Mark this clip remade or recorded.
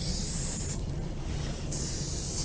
recorded